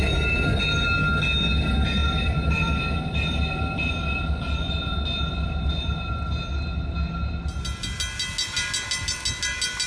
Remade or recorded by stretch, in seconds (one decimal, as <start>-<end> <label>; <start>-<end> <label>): 0.0-2.0 recorded; 2.0-6.1 remade; 6.1-9.9 recorded